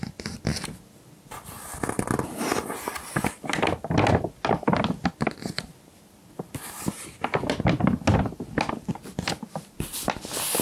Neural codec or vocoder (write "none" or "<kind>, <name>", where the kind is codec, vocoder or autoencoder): none